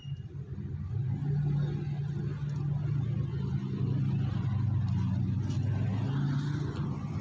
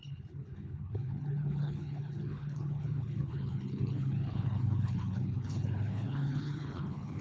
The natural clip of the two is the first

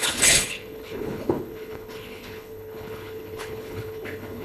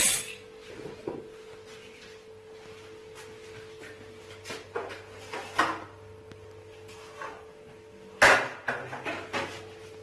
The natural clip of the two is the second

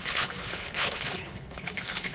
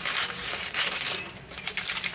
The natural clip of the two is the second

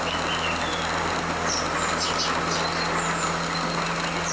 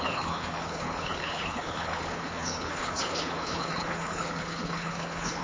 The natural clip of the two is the first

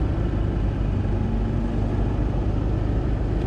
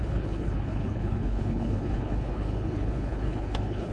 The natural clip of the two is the first